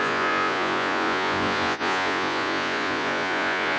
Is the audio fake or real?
fake